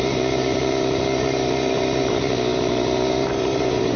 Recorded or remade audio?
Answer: remade